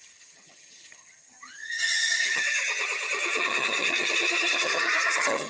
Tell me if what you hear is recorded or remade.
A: remade